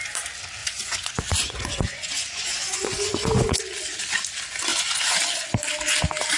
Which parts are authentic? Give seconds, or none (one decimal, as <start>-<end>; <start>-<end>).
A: 0.0-0.6; 3.6-4.7; 5.2-6.4